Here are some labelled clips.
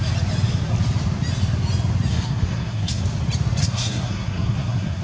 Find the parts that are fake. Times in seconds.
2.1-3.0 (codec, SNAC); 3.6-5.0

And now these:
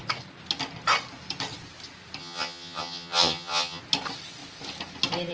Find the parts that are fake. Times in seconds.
2.2-3.8 (vocoder, HiFi-GAN)

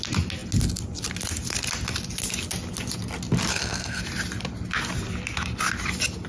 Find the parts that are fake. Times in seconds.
3.5-4.0 (codec, SNAC)

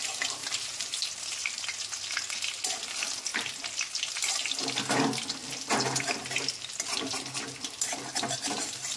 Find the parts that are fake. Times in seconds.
0.4-1.6 (vocoder, BigVGAN v2)

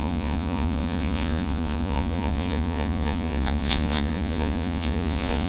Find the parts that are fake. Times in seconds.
0.0-5.5 (vocoder, Vocos)

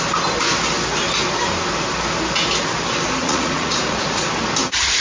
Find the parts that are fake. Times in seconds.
3.2-4.3 (vocoder, Vocos)

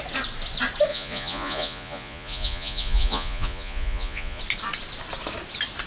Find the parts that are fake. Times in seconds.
0.9-4.4 (vocoder, Vocos)

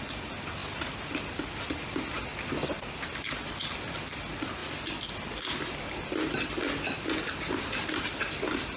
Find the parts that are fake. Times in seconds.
2.6-3.2 (vocoder, BigVGAN v2)